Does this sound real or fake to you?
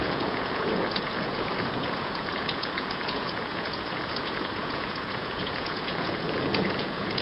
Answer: fake